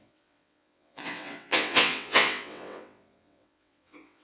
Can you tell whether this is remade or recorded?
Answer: remade